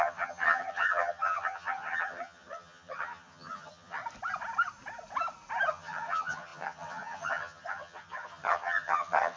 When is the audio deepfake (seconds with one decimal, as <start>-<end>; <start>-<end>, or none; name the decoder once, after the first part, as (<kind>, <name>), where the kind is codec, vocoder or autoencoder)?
0.0-4.0 (vocoder, HiFi-GAN); 5.7-9.4